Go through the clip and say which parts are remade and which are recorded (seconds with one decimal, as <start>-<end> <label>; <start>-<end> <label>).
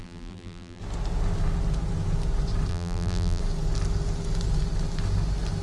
0.0-0.8 remade; 0.8-2.7 recorded; 2.7-3.4 remade; 3.4-5.6 recorded